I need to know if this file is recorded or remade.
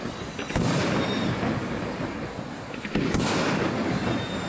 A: recorded